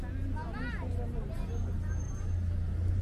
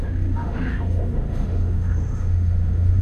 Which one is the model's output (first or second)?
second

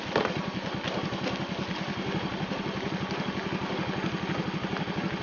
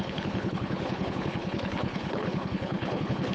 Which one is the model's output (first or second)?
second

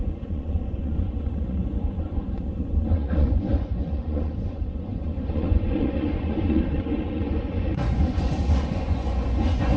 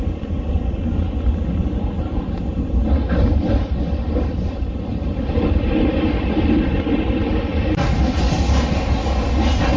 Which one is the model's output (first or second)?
first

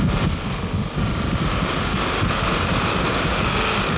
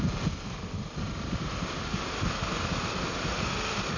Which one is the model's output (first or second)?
second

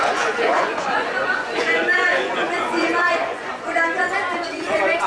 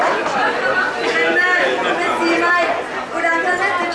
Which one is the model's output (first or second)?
first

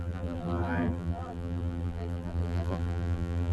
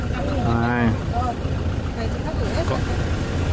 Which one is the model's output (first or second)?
first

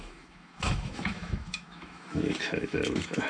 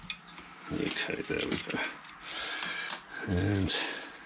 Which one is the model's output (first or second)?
first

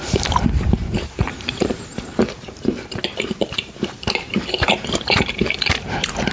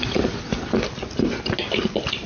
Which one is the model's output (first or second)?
first